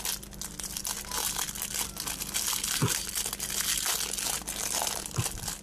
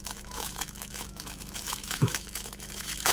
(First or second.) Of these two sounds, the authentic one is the first